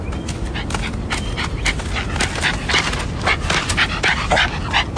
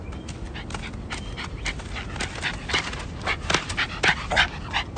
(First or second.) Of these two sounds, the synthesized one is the second